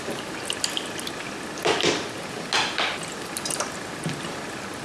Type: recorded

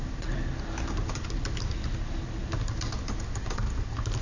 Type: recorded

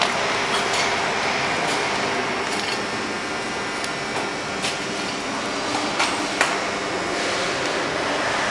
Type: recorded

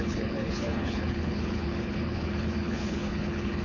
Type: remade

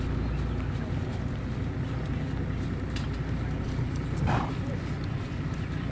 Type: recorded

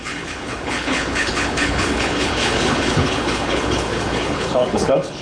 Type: remade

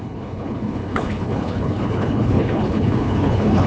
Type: remade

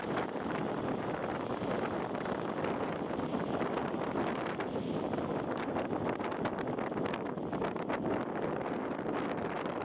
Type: recorded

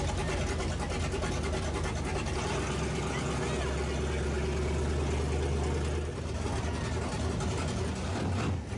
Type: recorded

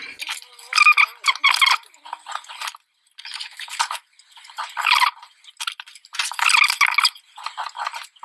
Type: recorded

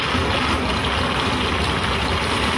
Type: recorded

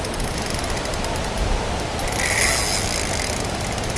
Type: recorded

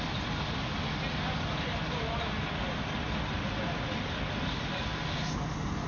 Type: recorded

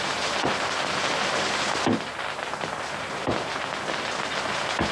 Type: recorded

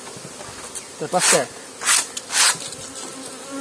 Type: recorded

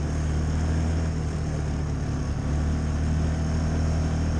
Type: recorded